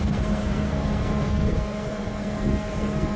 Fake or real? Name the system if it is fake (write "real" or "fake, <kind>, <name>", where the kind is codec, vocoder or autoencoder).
fake, codec, SNAC